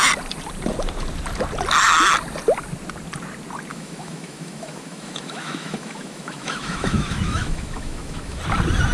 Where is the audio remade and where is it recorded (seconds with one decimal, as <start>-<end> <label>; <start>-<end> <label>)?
0.0-3.7 recorded; 3.7-8.4 remade; 8.4-8.9 recorded